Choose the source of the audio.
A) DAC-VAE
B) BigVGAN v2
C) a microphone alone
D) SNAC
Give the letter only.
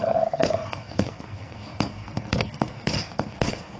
D